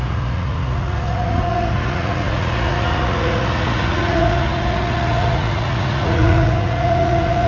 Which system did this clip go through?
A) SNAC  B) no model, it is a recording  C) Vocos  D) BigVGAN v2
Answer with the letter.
C